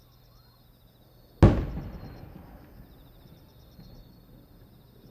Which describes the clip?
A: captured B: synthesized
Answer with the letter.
A